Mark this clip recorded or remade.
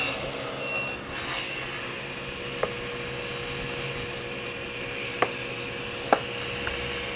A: recorded